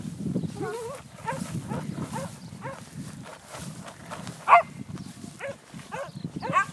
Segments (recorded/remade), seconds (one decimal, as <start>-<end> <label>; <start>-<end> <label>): 0.0-6.7 recorded